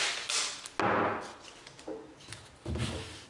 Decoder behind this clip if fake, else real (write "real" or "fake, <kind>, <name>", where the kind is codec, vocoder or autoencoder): real